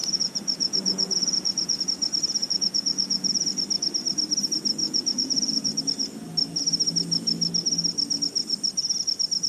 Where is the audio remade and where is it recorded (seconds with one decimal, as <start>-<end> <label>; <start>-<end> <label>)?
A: 0.0-1.8 remade; 1.8-2.4 recorded; 2.4-3.5 remade; 3.5-4.8 recorded; 4.8-5.8 remade; 5.8-9.5 recorded